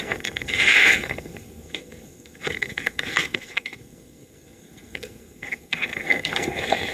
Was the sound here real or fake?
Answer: fake